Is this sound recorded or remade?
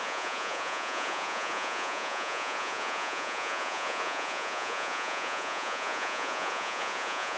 remade